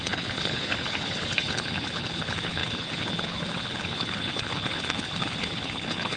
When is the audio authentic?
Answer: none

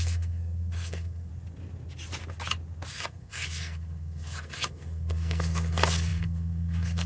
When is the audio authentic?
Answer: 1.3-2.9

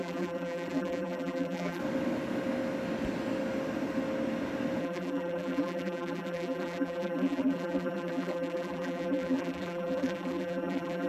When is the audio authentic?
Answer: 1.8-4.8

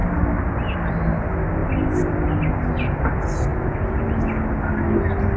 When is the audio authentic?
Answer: 0.0-5.4